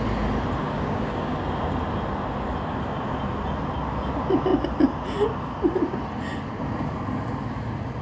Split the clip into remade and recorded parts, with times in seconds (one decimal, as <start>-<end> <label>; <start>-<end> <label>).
0.0-0.6 recorded; 0.6-1.4 remade; 1.4-8.0 recorded